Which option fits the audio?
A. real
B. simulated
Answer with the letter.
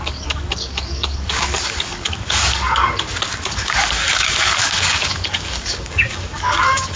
B